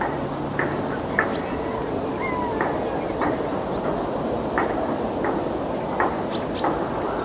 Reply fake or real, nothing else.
real